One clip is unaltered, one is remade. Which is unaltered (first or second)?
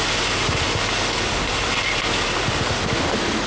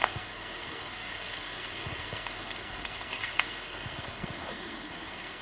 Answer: first